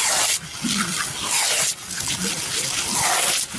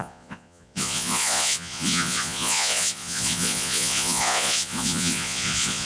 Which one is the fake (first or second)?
second